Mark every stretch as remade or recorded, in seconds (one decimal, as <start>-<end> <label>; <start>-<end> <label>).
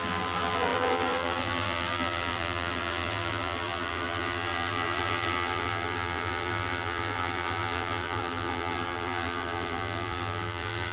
0.0-10.9 remade